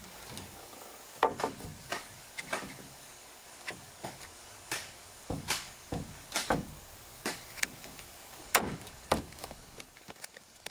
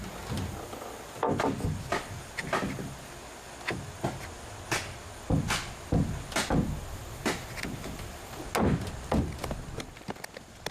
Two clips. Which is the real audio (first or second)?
second